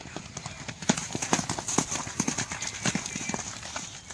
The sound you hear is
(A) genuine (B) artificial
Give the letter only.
A